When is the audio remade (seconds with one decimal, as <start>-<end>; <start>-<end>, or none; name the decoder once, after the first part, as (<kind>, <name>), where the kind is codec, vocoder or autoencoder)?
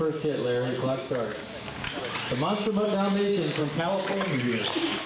1.3-2.0 (codec, DAC); 3.6-5.1